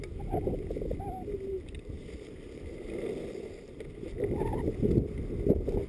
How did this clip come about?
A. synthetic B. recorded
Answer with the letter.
B